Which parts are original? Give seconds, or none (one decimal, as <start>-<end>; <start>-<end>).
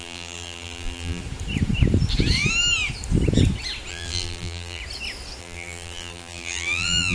1.2-3.9; 4.8-5.4